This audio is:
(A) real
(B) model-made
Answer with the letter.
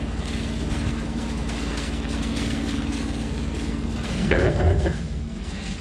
B